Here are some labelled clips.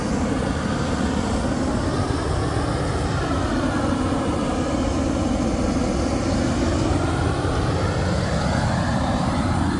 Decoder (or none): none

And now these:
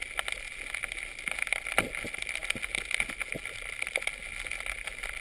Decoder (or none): none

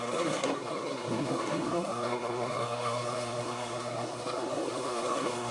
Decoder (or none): codec, SNAC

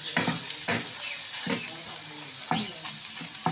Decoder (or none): none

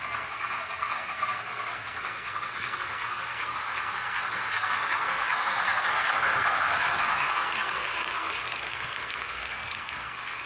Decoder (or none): codec, SNAC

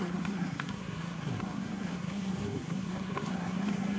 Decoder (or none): codec, SNAC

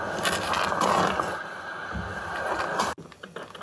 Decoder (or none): none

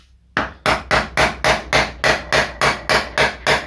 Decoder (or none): none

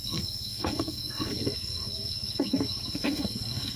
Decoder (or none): codec, SNAC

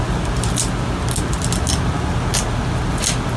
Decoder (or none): none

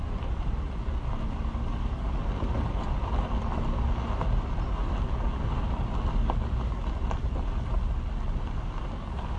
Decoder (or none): none